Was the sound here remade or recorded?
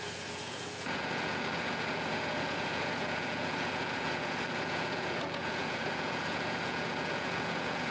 remade